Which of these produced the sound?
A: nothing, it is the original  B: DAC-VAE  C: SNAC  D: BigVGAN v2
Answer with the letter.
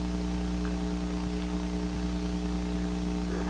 A